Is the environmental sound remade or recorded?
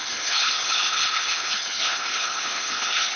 remade